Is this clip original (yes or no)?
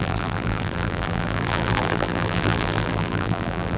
no